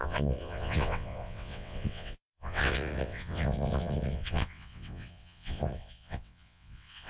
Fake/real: fake